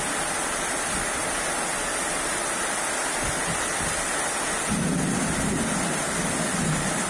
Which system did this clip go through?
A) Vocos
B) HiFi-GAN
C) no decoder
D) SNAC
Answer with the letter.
C